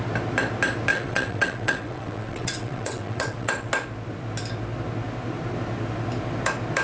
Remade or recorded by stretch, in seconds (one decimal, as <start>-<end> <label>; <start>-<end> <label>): 0.0-0.9 recorded; 0.9-3.7 remade; 3.7-6.8 recorded

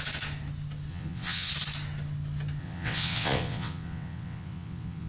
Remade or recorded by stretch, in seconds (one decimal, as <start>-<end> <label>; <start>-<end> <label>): 0.0-0.9 recorded; 0.9-1.5 remade; 1.5-2.6 recorded; 2.6-5.1 remade

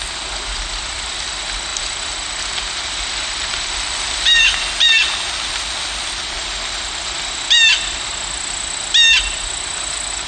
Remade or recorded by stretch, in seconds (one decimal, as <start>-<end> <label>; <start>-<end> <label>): 0.0-10.3 recorded

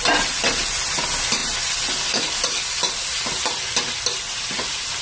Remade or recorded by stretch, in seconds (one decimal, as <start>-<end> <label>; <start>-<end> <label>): 0.0-5.0 recorded